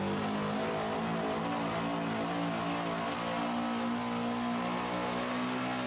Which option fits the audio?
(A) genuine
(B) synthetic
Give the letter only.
A